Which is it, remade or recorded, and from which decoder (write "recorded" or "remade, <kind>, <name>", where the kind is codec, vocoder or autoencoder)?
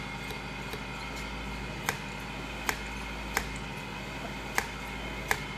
recorded